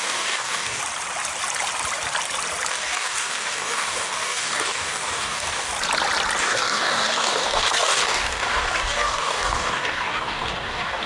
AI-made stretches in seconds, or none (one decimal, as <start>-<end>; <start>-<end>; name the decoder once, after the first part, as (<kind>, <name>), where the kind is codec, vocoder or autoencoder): 0.0-0.8 (codec, DAC); 2.7-5.7; 6.4-11.1